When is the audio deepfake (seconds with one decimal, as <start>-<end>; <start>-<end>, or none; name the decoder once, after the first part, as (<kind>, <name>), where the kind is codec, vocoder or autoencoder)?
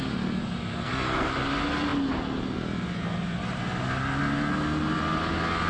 0.7-1.3 (codec, SNAC)